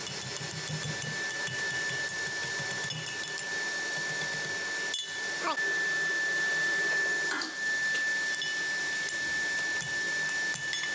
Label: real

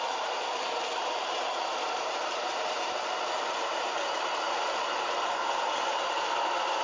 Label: fake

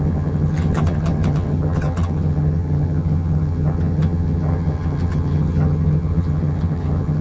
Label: fake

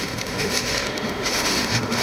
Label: fake